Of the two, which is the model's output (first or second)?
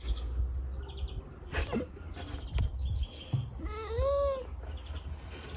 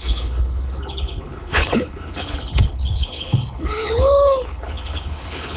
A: second